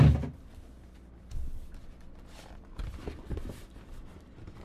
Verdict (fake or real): fake